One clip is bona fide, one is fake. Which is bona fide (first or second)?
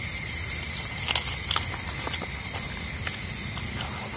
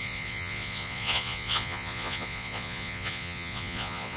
first